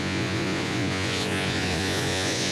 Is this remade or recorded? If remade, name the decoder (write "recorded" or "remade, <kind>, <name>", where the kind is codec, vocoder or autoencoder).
remade, vocoder, Vocos